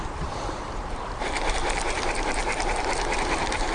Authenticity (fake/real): fake